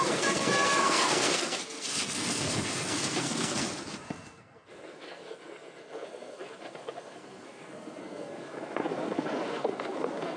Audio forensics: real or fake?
fake